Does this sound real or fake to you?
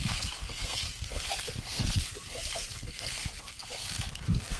fake